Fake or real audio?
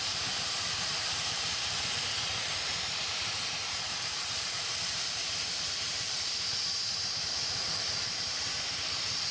fake